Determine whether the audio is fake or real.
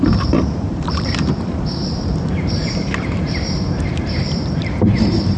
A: fake